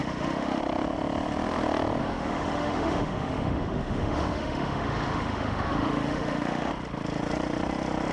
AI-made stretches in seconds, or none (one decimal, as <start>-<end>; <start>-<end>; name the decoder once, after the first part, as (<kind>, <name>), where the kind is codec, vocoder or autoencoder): 0.0-0.6 (autoencoder, DAC-VAE); 2.0-6.7